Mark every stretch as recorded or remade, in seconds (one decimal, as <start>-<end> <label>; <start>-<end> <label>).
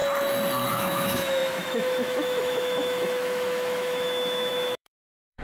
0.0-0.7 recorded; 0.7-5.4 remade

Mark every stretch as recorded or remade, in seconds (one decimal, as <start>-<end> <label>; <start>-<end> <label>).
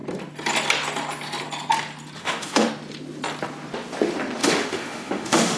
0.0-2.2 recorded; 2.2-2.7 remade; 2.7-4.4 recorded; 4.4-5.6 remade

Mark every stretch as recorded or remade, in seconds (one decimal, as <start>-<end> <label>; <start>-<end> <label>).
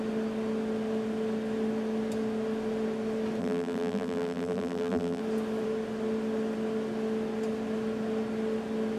0.0-3.4 recorded; 3.4-5.2 remade; 5.2-9.0 recorded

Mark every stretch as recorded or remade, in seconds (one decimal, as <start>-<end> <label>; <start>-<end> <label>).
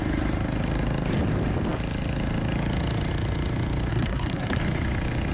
0.0-3.9 recorded; 3.9-4.6 remade; 4.6-5.3 recorded